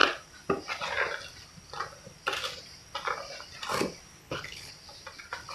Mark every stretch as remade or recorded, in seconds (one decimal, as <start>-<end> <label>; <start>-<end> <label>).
0.0-4.2 recorded; 4.2-4.7 remade; 4.7-5.5 recorded